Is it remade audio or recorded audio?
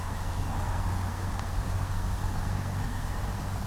remade